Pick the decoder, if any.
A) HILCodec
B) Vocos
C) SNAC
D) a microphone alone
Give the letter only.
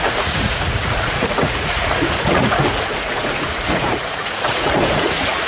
B